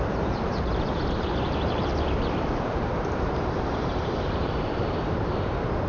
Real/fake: fake